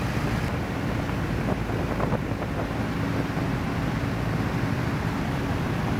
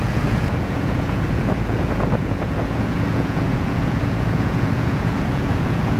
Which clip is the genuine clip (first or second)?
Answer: first